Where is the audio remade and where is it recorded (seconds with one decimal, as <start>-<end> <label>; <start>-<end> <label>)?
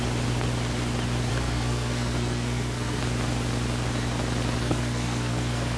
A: 0.0-1.3 recorded; 1.3-3.0 remade; 3.0-4.6 recorded; 4.6-5.8 remade